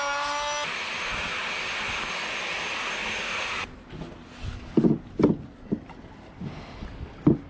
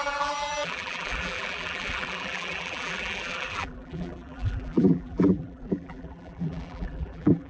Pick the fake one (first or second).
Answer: second